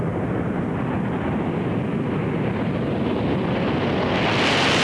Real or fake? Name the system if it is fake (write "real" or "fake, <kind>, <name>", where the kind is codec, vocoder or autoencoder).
real